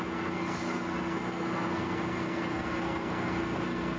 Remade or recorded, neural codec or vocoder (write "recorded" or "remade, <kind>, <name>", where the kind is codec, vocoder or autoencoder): remade, codec, SNAC